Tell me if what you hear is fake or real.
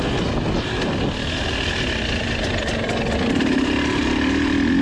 real